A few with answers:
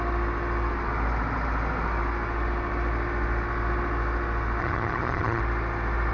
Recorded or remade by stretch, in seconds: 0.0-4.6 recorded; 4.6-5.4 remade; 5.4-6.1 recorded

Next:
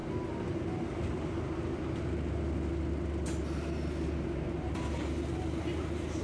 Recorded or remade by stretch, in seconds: 0.0-6.2 recorded

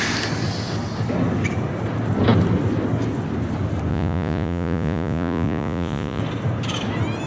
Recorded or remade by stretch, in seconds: 0.0-3.9 recorded; 3.9-6.2 remade; 6.2-7.3 recorded

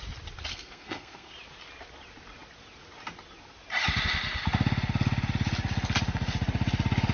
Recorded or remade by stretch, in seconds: 0.0-0.5 recorded; 0.5-1.3 remade; 1.3-7.1 recorded

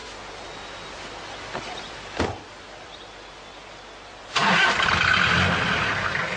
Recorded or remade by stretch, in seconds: 0.0-6.4 recorded

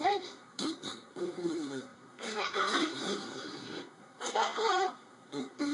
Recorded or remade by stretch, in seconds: 0.0-5.7 remade